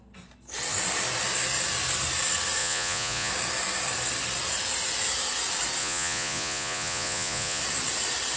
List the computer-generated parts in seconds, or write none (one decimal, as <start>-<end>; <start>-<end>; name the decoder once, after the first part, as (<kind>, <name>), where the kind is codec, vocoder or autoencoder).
2.6-3.3 (vocoder, Vocos); 5.8-7.6